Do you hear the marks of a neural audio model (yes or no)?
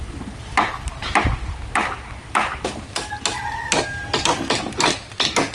no